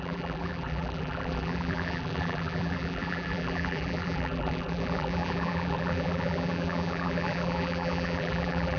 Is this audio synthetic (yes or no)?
yes